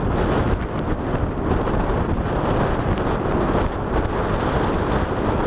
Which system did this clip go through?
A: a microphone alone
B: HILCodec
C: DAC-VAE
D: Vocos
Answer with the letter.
A